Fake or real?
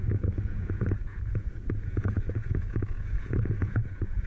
fake